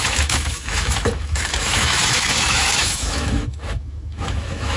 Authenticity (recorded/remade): remade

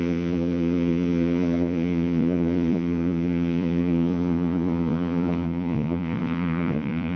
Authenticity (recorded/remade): remade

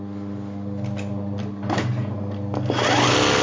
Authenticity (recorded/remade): recorded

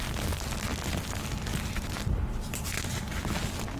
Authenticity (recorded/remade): recorded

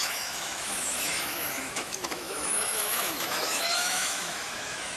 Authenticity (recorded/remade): remade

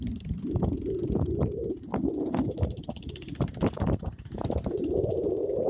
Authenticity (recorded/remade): remade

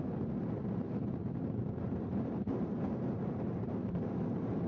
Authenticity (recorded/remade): recorded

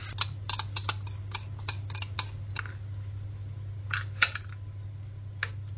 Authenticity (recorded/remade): recorded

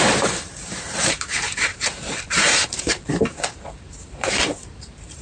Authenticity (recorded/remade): remade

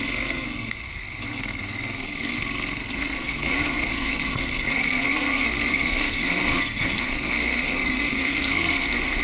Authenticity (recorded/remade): remade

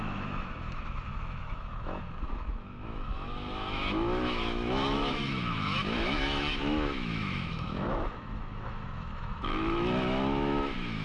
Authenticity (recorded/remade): remade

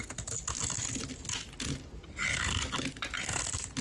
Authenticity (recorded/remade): recorded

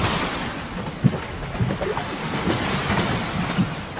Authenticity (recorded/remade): recorded